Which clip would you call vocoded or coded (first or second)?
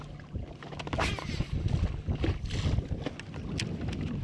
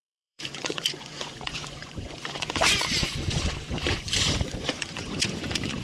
second